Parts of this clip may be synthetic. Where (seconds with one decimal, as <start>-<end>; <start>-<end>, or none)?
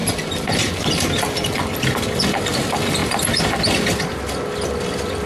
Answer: 0.0-1.6